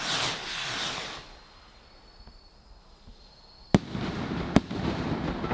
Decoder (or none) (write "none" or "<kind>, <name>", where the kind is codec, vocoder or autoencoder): none